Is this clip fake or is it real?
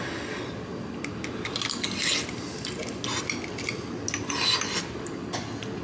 real